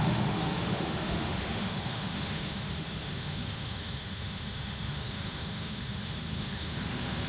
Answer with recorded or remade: remade